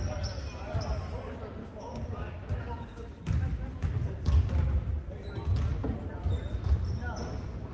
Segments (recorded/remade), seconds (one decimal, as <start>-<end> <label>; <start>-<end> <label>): 0.0-1.6 recorded; 1.6-3.2 remade; 3.2-7.7 recorded